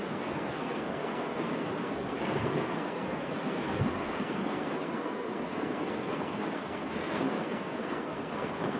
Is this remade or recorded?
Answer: remade